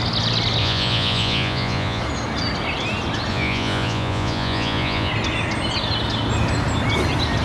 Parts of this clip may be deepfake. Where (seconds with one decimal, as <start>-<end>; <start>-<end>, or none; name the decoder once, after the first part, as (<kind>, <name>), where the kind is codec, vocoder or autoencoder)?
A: 0.6-2.0 (vocoder, Vocos); 3.3-5.1